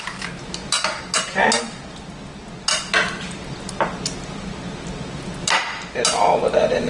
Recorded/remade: recorded